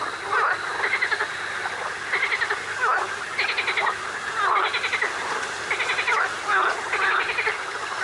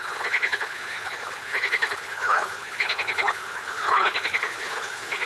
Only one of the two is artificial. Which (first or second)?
second